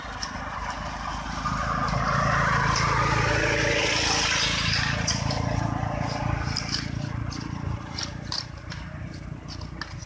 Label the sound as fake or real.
real